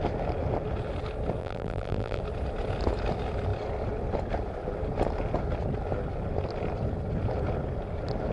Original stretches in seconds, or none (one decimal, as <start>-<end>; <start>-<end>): 0.0-1.4; 2.2-8.3